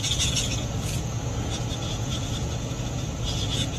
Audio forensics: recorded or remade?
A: remade